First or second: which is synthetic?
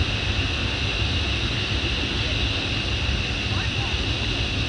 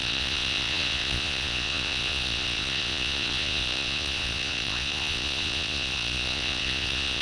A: second